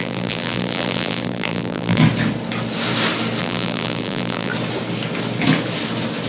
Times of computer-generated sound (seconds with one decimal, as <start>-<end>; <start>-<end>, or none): 0.0-2.0; 3.4-4.5